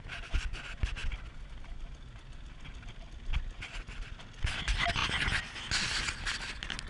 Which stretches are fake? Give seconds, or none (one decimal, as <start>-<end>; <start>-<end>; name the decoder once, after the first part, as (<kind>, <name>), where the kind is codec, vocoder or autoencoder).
none